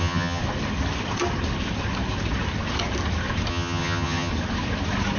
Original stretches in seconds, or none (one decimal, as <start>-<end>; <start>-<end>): 0.4-3.5; 4.3-5.2